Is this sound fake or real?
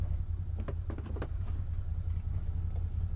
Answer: real